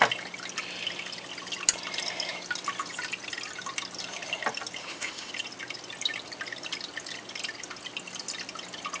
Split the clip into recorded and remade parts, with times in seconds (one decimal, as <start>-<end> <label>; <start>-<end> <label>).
0.0-4.8 recorded; 4.8-5.3 remade; 5.3-9.0 recorded

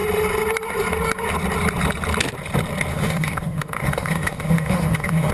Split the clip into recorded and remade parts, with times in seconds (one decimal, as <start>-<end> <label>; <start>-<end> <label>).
0.0-2.9 recorded; 2.9-5.3 remade